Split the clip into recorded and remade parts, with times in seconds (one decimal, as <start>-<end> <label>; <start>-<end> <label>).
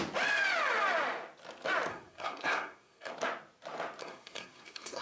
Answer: 0.0-1.9 recorded; 1.9-3.1 remade; 3.1-4.0 recorded; 4.0-5.0 remade